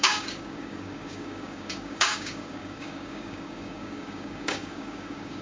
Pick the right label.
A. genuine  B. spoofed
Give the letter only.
B